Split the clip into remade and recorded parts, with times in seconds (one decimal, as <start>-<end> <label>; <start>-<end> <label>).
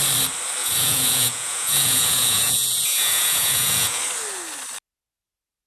0.0-0.6 recorded; 0.6-4.0 remade; 4.0-5.7 recorded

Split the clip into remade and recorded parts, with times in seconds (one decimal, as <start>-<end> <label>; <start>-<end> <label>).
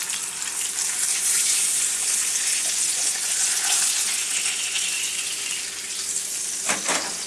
0.0-1.1 recorded; 1.1-5.5 remade; 5.5-7.3 recorded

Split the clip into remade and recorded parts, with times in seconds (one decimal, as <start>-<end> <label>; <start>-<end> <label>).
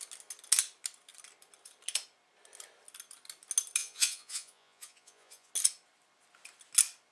0.0-3.8 recorded; 3.8-5.5 remade; 5.5-7.1 recorded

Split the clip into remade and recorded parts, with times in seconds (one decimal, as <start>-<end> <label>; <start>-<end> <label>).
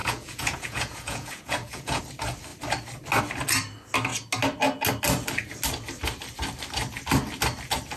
0.0-2.0 remade; 2.0-8.0 recorded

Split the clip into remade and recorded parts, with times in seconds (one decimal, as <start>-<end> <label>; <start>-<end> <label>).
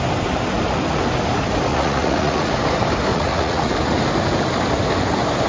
0.0-1.7 recorded; 1.7-2.5 remade; 2.5-3.1 recorded; 3.1-3.7 remade; 3.7-5.5 recorded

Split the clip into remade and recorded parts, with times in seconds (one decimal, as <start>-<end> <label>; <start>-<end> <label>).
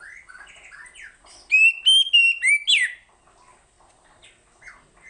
0.0-5.1 recorded